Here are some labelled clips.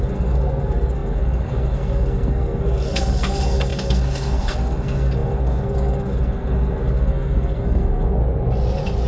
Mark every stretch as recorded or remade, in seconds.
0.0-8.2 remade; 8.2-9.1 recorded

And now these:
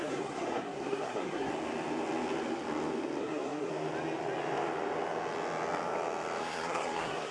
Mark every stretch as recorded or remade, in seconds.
0.0-1.5 remade; 1.5-3.2 recorded; 3.2-3.7 remade; 3.7-6.4 recorded; 6.4-7.3 remade

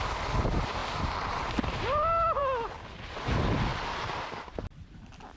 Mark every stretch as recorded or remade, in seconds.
0.0-5.4 recorded